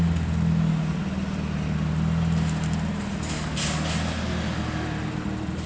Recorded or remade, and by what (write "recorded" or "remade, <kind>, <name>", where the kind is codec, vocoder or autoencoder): recorded